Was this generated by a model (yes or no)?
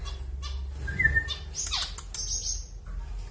no